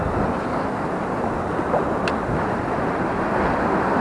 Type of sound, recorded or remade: recorded